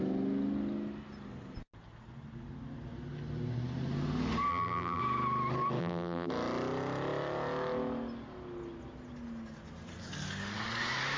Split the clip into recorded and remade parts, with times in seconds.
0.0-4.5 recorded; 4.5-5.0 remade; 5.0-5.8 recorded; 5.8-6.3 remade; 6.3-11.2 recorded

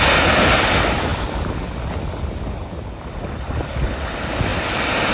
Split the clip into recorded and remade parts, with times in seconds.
0.0-5.1 recorded